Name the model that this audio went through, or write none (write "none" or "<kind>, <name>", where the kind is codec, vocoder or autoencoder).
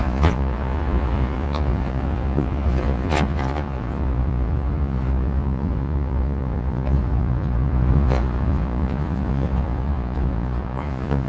vocoder, Vocos